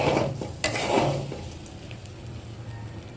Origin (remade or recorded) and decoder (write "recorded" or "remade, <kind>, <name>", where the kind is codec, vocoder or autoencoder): recorded